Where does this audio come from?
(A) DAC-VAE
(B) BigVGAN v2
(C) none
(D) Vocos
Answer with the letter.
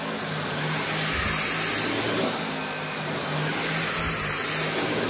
C